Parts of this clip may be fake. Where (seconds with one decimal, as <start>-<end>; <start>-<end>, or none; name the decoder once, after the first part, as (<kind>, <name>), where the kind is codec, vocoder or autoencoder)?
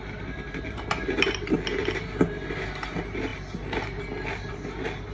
none